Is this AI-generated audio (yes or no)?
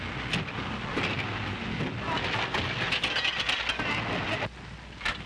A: no